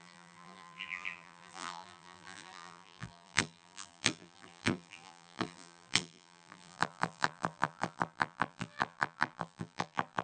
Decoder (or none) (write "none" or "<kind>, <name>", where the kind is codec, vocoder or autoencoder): vocoder, BigVGAN v2